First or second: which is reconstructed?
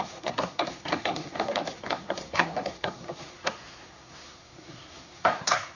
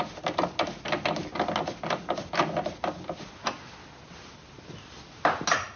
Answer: first